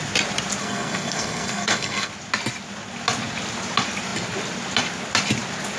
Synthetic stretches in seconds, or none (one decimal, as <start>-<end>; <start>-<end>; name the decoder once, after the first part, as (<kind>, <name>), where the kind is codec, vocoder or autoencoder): 0.6-2.1 (codec, SNAC)